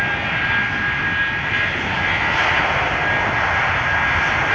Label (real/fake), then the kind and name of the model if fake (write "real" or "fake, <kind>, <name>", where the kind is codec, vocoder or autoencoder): real